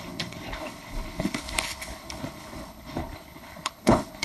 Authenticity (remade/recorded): remade